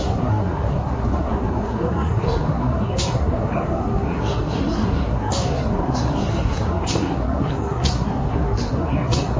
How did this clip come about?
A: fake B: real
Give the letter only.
A